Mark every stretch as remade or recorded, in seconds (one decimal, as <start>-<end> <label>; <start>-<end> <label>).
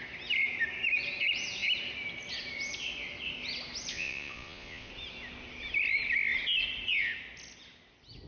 0.0-3.9 recorded; 3.9-4.9 remade; 4.9-8.3 recorded